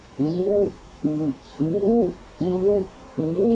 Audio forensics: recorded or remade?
remade